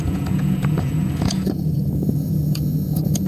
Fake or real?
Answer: fake